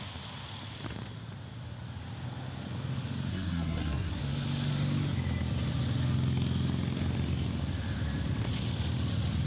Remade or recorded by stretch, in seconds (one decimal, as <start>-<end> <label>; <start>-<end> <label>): 0.0-3.3 recorded; 3.3-4.2 remade; 4.2-9.5 recorded